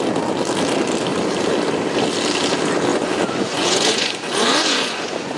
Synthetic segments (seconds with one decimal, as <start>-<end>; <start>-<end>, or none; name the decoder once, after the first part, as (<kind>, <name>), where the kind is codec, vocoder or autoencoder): 2.9-5.4 (vocoder, Vocos)